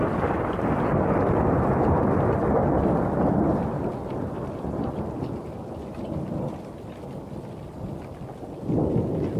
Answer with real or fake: real